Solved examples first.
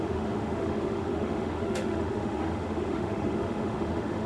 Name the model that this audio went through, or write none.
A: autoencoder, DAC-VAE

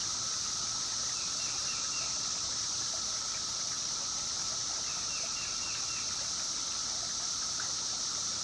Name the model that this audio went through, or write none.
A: none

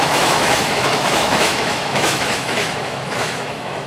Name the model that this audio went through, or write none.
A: autoencoder, DAC-VAE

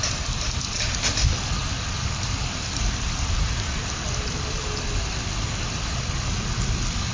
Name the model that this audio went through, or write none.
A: none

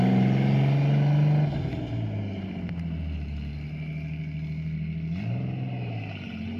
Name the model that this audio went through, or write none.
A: none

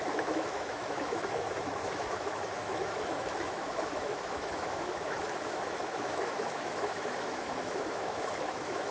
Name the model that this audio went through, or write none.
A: autoencoder, DAC-VAE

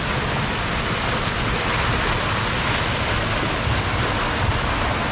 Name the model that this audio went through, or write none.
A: none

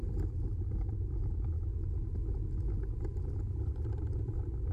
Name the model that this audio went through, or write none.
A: none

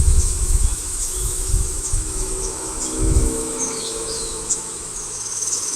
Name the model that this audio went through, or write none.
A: autoencoder, DAC-VAE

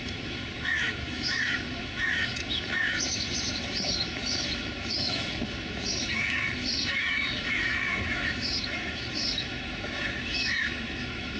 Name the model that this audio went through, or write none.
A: autoencoder, DAC-VAE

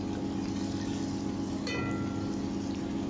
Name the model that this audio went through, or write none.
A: none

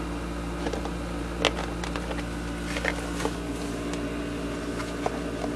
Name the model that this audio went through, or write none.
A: none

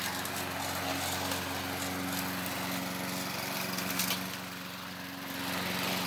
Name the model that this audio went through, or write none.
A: none